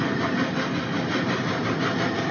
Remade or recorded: recorded